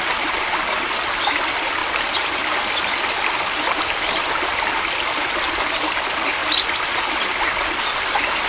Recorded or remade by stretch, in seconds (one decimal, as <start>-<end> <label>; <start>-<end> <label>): 0.0-8.5 recorded